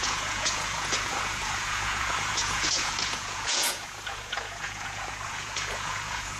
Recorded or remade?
remade